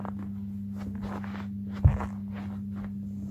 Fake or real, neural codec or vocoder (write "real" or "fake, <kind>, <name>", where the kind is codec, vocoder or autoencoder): real